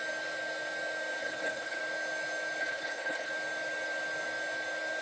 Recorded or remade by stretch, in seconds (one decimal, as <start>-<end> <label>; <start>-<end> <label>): 0.0-1.2 recorded; 1.2-1.8 remade; 1.8-2.6 recorded; 2.6-3.3 remade; 3.3-5.0 recorded